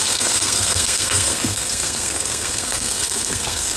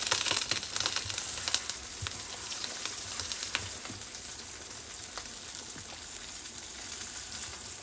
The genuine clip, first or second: second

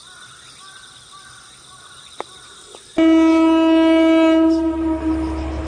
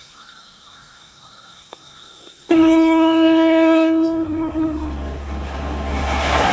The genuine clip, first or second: first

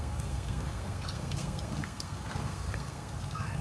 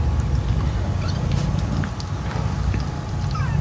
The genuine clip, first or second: second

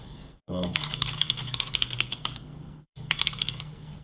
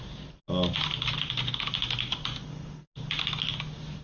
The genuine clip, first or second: second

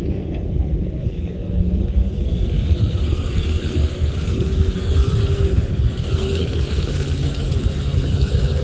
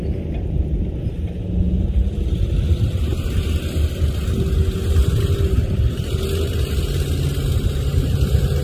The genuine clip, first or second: second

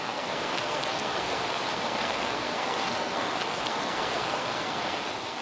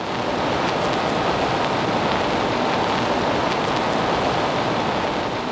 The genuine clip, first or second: second